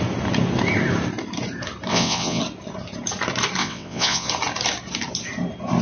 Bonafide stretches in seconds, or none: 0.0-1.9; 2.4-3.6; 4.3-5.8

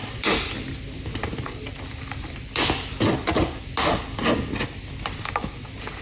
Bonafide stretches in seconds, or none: 0.0-6.0

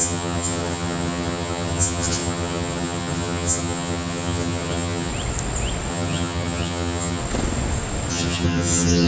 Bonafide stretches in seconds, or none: 5.1-5.9; 7.2-8.1